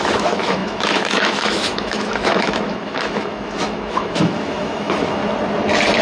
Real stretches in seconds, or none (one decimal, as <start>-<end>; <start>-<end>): 5.2-6.0